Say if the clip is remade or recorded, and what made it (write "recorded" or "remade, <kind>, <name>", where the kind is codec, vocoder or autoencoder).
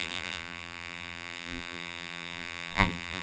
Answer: remade, vocoder, BigVGAN v2